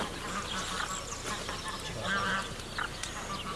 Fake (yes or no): no